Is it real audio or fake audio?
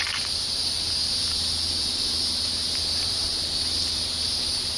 real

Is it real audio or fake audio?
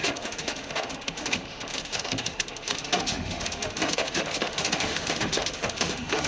fake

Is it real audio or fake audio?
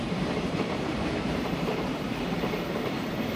fake